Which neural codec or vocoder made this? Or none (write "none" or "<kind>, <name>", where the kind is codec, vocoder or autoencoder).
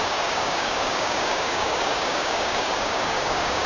codec, DAC